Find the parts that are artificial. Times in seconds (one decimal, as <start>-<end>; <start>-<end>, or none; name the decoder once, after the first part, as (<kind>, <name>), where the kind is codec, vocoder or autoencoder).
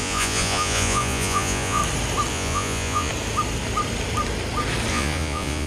0.0-1.8 (vocoder, Vocos); 2.3-3.1; 4.9-5.7